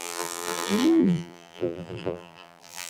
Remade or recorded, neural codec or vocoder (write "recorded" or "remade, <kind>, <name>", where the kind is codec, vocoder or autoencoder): remade, vocoder, BigVGAN v2